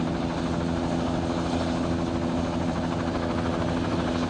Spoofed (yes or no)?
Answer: no